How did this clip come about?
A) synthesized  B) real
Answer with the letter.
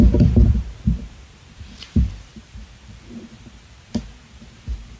A